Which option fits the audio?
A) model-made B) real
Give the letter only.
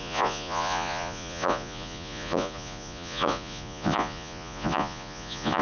A